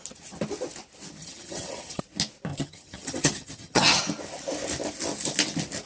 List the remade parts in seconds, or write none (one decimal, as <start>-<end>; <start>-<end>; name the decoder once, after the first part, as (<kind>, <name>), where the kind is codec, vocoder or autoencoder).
1.2-2.0 (vocoder, HiFi-GAN); 2.5-4.0